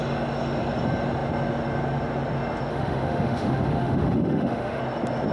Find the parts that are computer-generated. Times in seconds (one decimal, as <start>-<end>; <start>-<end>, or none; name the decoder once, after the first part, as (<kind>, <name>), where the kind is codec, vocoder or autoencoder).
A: 2.7-4.8 (autoencoder, DAC-VAE)